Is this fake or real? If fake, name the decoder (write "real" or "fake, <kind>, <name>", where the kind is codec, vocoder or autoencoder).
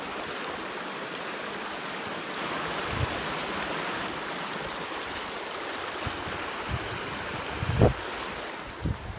real